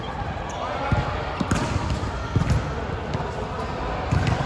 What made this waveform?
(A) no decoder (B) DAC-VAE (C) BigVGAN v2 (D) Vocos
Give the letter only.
A